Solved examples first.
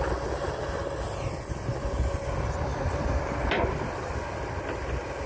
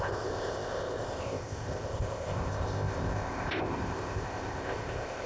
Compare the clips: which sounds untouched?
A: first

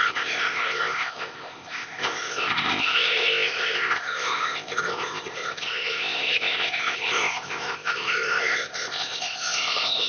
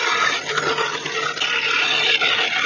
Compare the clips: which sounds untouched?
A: second